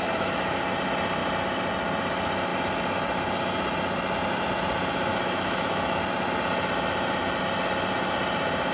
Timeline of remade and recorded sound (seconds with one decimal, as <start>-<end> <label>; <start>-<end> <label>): 0.0-0.6 remade; 0.6-5.1 recorded; 5.1-6.0 remade; 6.0-8.7 recorded